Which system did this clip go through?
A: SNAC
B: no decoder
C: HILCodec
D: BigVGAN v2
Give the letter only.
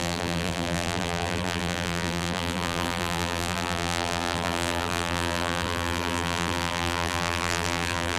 D